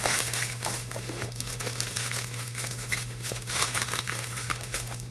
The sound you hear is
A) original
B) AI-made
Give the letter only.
B